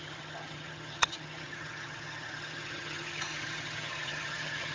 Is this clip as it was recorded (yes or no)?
no